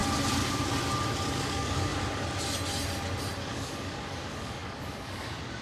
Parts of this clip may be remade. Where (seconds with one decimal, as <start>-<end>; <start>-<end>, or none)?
1.3-1.9; 3.4-5.6

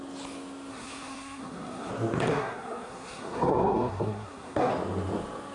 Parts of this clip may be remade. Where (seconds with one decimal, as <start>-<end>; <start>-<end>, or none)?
0.7-1.9; 2.3-4.7

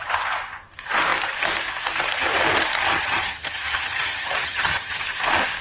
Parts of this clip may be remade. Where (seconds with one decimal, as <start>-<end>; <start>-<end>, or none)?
2.9-5.0

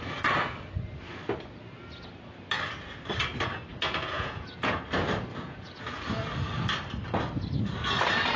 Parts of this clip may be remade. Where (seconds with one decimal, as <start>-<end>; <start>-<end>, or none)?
3.7-4.8; 5.3-5.8

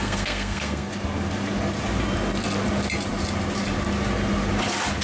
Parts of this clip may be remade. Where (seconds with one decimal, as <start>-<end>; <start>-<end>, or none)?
0.0-0.9

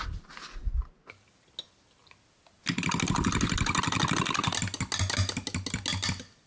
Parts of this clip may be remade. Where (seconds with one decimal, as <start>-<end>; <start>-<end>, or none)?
none